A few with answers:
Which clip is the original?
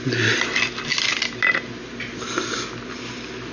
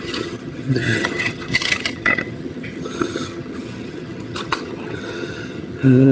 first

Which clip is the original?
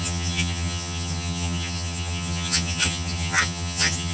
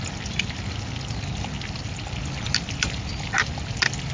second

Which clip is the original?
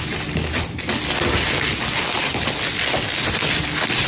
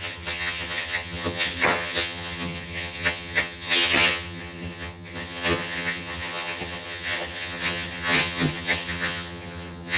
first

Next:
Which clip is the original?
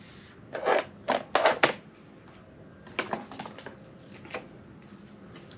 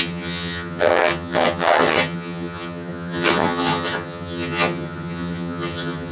first